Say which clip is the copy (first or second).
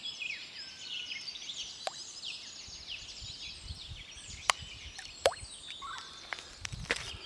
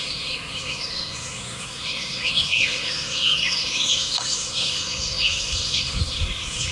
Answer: second